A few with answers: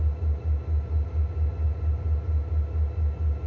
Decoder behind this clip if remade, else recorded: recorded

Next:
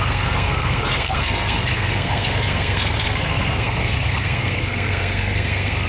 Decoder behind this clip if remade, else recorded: remade, codec, SNAC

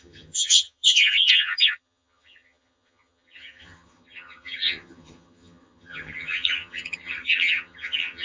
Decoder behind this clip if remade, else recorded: remade, vocoder, HiFi-GAN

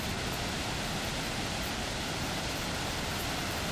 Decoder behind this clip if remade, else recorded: recorded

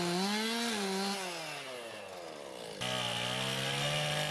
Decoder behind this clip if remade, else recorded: recorded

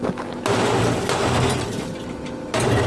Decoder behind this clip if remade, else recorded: recorded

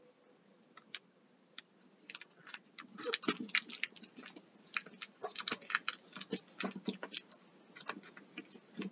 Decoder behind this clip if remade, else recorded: recorded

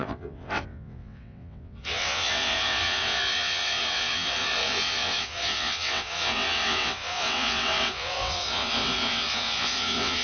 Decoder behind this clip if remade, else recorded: remade, vocoder, WaveNeXt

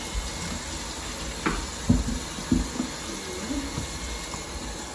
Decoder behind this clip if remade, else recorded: recorded